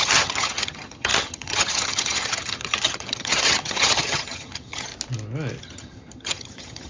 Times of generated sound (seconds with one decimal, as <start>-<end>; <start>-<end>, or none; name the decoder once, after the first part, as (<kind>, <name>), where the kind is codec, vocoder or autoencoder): 0.0-4.9 (vocoder, HiFi-GAN); 5.6-6.9